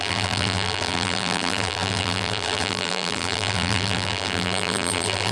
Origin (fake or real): fake